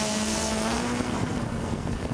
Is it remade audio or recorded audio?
remade